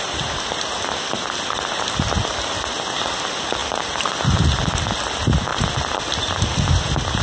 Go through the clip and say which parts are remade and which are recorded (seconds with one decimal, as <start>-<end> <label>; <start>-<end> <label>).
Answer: 0.0-3.6 recorded; 3.6-4.6 remade; 4.6-7.2 recorded